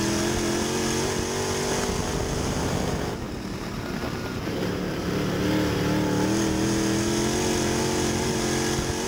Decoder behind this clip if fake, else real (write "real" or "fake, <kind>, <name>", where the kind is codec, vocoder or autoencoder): real